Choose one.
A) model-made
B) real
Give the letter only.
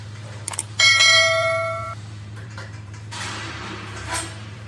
A